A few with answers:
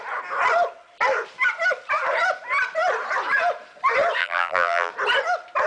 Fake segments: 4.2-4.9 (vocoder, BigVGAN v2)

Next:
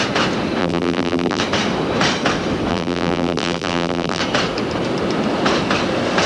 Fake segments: 0.6-1.4 (vocoder, BigVGAN v2); 2.7-4.2

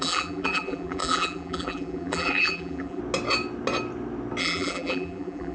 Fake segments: 0.0-3.0 (vocoder, BigVGAN v2); 4.4-5.5